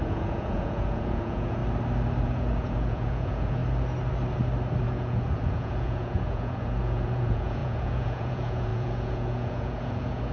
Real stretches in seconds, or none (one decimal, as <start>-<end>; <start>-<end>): 1.6-2.2; 3.6-4.8